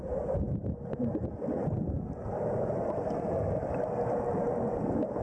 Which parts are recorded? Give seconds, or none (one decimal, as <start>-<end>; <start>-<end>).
0.0-5.2